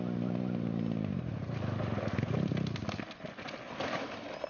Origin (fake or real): real